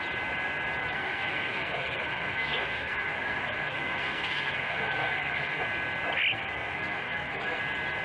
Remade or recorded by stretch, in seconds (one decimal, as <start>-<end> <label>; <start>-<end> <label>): 0.0-0.8 recorded; 0.8-5.6 remade; 5.6-6.3 recorded; 6.3-7.6 remade; 7.6-8.0 recorded

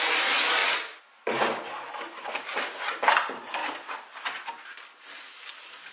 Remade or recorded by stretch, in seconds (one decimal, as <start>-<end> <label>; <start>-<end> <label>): 0.0-5.9 recorded